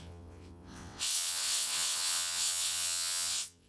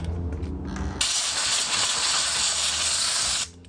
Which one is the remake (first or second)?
first